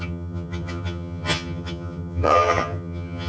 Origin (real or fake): fake